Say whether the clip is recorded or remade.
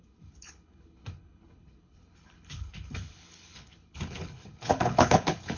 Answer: remade